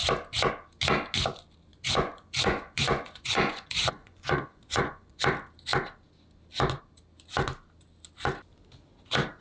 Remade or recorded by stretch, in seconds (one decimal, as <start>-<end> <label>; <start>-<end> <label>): 0.0-1.7 recorded; 1.7-5.2 remade; 5.2-9.4 recorded